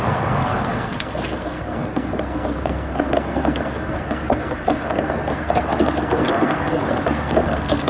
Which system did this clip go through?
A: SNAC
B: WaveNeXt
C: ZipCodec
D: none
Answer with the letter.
A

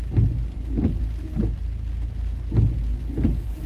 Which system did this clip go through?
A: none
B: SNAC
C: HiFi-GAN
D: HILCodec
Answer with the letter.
A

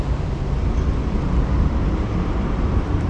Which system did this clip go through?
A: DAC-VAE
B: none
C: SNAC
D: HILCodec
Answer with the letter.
B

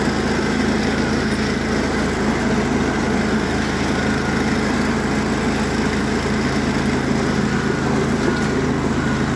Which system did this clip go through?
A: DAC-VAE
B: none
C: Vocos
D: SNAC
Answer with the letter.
B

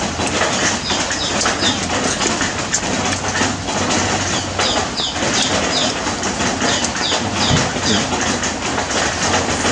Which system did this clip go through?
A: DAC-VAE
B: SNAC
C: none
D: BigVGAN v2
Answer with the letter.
C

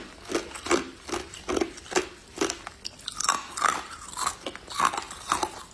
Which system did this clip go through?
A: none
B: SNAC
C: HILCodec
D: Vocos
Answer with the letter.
A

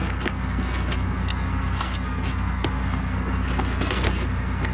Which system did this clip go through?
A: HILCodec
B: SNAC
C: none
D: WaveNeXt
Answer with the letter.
B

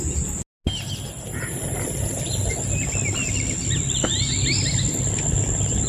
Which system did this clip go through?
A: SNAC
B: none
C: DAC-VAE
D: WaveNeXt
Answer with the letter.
B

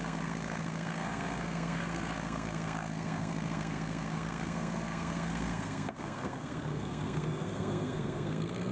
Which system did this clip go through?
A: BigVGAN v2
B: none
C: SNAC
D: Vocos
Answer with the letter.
C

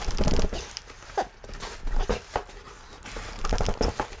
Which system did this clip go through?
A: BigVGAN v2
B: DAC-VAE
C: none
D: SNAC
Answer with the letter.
C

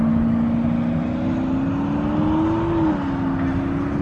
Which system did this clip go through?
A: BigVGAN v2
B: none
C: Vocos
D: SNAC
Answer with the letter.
B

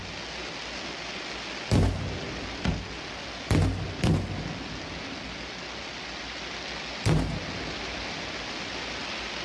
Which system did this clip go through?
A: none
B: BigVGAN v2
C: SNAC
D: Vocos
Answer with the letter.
A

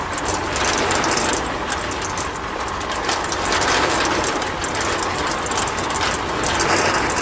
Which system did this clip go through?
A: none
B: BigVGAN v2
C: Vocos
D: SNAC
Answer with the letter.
A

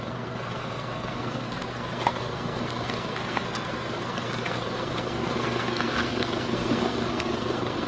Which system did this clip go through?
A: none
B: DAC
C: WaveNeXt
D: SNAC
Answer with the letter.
D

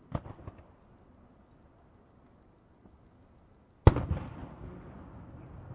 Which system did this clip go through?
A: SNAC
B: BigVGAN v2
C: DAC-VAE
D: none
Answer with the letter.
D